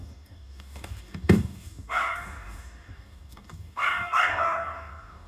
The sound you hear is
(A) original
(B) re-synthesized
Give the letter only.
B